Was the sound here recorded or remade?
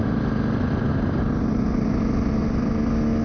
recorded